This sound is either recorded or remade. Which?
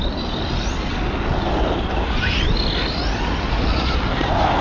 recorded